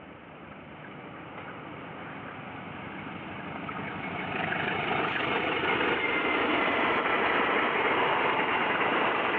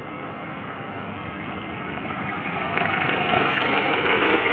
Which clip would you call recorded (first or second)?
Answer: first